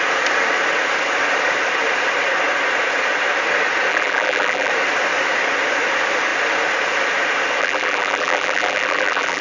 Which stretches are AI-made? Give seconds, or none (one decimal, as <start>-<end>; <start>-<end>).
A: 3.9-4.7; 7.6-9.4